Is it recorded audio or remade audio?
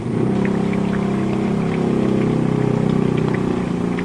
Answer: recorded